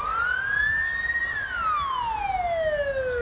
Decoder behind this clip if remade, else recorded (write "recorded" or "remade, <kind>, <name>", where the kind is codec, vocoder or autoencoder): recorded